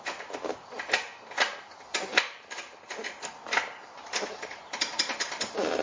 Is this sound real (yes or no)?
yes